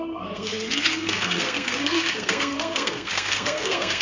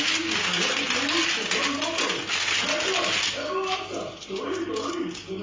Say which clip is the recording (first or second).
second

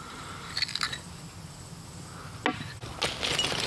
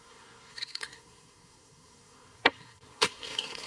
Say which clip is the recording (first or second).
first